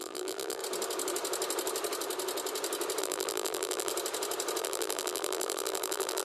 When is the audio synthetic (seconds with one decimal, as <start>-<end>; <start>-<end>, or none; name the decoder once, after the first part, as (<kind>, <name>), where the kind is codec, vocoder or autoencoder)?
0.0-0.6 (vocoder, BigVGAN v2); 3.0-3.9; 4.6-6.2